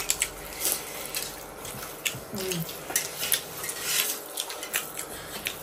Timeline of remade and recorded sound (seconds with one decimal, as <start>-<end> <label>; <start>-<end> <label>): 0.0-5.6 recorded